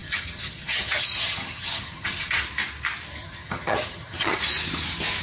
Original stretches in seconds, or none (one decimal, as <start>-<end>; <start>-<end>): 2.4-3.2; 4.4-5.2

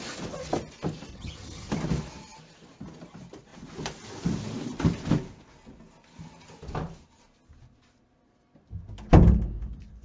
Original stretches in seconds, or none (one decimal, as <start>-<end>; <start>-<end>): 0.0-1.1; 1.7-10.0

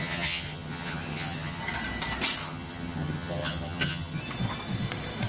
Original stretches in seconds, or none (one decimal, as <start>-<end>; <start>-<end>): 1.6-2.4; 4.2-5.3